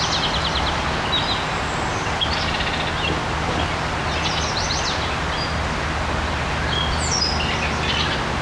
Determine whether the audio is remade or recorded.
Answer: recorded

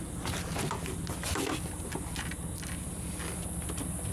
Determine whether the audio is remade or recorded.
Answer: recorded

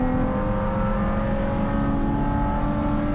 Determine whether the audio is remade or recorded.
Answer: recorded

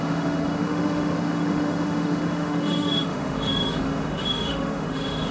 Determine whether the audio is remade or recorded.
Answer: remade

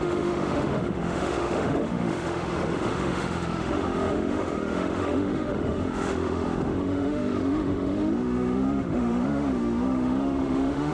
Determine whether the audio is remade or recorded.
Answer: remade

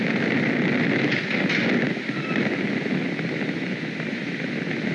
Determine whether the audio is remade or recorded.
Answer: recorded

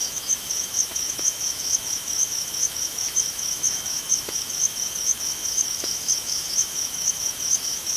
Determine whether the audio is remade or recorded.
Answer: remade